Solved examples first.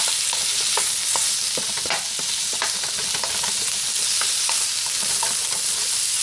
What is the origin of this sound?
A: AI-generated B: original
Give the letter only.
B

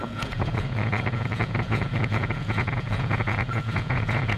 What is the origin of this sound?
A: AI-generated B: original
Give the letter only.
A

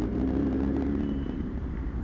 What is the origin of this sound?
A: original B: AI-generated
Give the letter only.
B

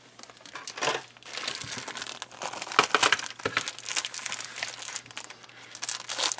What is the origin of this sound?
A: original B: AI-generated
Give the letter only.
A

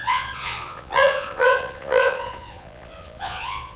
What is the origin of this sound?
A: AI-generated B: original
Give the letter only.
A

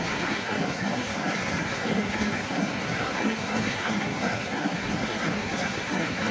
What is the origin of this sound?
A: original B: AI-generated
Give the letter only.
B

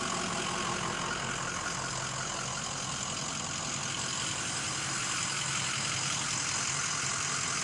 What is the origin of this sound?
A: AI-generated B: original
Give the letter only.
B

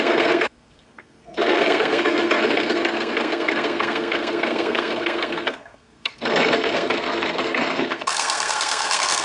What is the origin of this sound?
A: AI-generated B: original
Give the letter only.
A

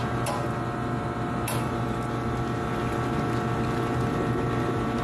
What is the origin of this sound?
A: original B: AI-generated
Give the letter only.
A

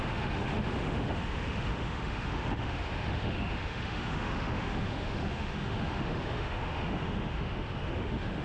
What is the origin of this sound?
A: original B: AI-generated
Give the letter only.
B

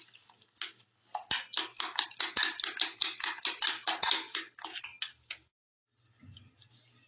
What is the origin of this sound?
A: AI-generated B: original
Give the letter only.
B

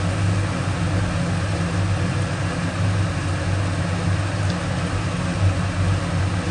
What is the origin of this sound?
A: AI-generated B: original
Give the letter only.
B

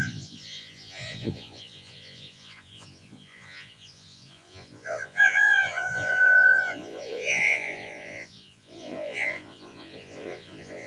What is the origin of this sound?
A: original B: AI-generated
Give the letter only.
B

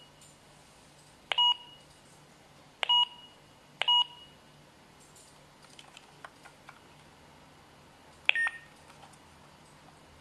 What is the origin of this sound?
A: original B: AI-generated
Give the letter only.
A